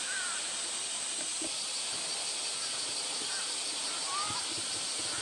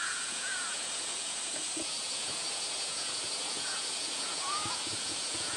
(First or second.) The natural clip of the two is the first